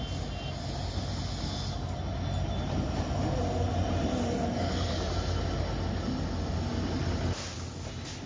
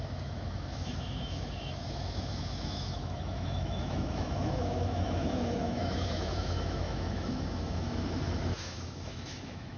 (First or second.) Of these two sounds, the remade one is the second